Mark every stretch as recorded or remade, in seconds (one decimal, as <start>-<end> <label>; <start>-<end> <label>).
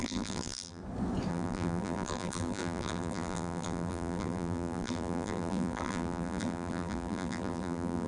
0.0-0.8 remade; 0.8-1.3 recorded; 1.3-8.1 remade